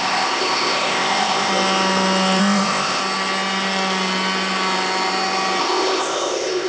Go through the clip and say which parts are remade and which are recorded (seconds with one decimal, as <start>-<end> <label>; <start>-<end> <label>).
0.0-1.5 remade; 1.5-2.4 recorded; 2.4-3.0 remade; 3.0-5.6 recorded; 5.6-6.7 remade